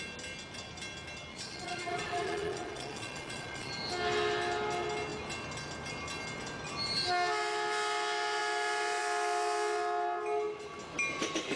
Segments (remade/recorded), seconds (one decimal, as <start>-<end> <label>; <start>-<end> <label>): 0.0-1.3 recorded; 1.3-3.7 remade; 3.7-11.6 recorded